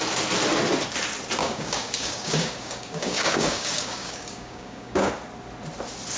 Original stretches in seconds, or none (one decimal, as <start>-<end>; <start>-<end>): 0.0-1.4; 5.1-6.2

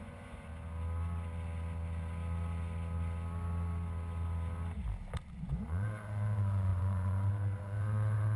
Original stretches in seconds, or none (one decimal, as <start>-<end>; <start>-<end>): 0.5-5.4

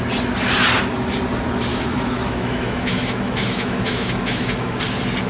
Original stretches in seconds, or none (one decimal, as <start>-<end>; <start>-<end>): 0.0-1.7; 4.8-5.3

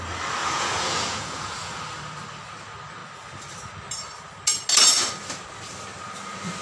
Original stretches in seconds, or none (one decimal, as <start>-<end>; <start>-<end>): 0.0-0.4; 1.7-6.6